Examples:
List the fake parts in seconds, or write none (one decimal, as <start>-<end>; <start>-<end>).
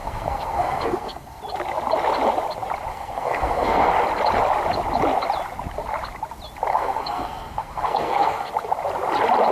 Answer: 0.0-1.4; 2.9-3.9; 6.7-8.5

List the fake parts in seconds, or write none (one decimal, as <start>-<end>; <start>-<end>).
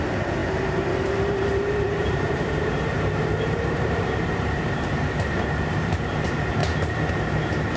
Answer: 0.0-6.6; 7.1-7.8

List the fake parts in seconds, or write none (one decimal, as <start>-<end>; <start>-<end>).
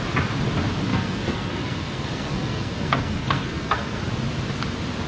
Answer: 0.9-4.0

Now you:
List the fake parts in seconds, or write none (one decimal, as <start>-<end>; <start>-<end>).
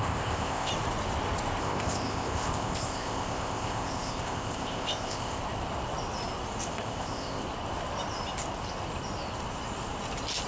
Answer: 0.0-0.7; 1.6-5.4; 6.7-7.4